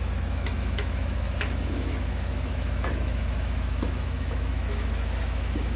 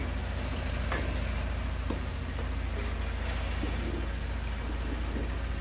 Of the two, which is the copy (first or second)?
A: first